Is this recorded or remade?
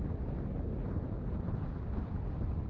recorded